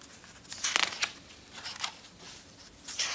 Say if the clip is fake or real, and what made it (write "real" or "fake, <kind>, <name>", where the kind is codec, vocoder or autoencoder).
real